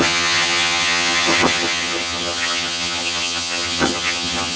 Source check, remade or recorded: remade